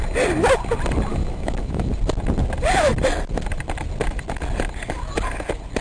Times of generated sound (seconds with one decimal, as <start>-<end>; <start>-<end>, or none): 1.1-1.9